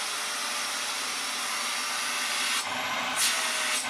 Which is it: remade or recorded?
recorded